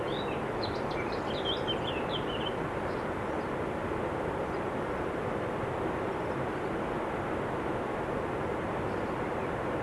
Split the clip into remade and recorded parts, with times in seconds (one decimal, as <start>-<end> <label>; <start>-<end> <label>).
0.0-8.6 recorded; 8.6-9.8 remade